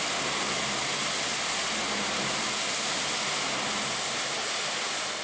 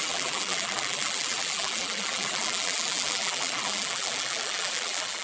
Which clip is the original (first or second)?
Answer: first